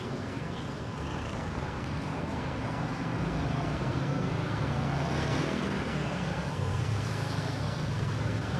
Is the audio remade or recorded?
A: remade